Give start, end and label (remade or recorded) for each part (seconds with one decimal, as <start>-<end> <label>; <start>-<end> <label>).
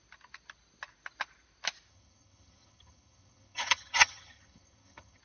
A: 0.0-1.9 recorded; 1.9-5.2 remade